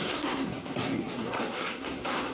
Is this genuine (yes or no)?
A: no